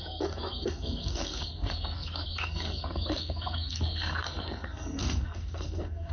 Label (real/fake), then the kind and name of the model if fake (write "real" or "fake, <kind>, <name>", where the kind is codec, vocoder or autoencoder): fake, codec, SNAC